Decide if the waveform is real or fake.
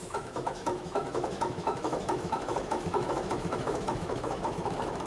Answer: fake